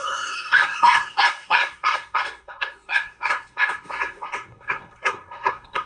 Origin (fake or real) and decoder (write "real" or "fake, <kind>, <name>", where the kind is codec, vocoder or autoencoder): fake, codec, SNAC